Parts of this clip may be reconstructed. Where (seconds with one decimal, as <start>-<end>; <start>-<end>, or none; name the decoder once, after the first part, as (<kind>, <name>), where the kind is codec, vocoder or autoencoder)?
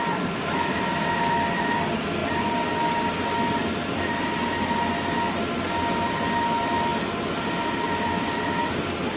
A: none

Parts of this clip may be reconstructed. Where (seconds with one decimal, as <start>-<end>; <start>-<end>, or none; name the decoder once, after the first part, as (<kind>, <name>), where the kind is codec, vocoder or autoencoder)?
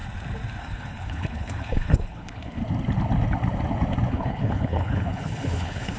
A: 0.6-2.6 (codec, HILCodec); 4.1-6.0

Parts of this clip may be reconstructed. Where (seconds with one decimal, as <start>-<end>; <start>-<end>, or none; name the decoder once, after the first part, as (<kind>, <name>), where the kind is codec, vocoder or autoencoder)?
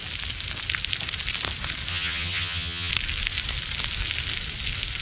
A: 1.9-2.9 (vocoder, HiFi-GAN)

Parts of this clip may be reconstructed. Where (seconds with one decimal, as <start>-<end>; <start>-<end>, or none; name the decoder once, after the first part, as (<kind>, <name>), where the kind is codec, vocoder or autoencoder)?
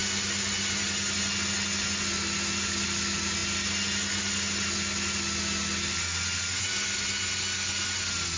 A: none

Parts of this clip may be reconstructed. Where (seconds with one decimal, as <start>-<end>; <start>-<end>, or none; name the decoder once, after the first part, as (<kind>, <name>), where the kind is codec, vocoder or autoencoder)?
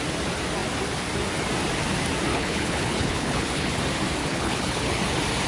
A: 2.3-3.8 (codec, HILCodec); 4.2-5.0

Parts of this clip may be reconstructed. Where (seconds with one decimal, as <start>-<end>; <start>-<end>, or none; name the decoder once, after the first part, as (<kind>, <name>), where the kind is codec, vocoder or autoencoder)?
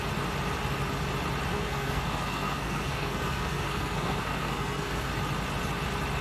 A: 1.5-5.1 (codec, SNAC)